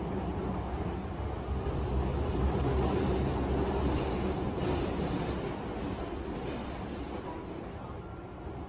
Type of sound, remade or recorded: recorded